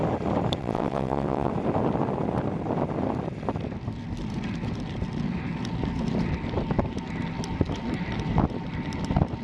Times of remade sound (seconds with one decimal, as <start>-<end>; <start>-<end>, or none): 0.6-1.5